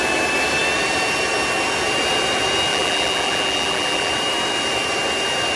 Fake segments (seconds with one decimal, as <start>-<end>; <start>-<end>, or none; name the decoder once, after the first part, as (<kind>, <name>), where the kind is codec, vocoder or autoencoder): 2.7-4.1 (vocoder, BigVGAN v2)